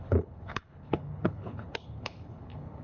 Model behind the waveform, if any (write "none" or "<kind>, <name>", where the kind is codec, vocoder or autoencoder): codec, HILCodec